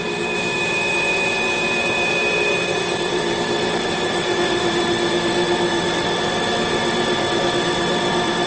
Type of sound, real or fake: fake